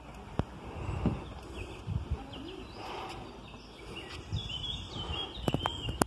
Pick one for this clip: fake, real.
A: real